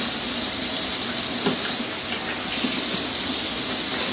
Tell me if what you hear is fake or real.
real